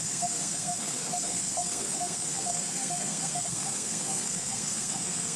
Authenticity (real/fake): fake